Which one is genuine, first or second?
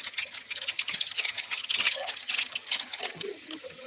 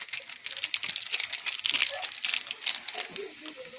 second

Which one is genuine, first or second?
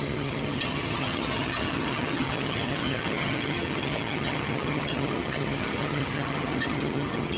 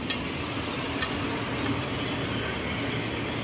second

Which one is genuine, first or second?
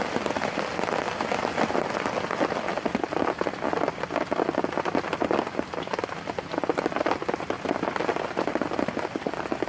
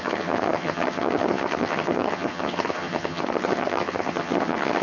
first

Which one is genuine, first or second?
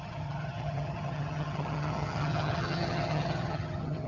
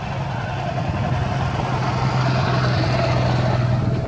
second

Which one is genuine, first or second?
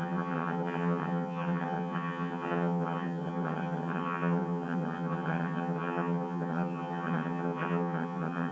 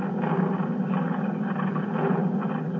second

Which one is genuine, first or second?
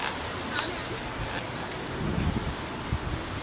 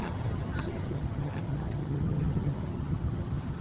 first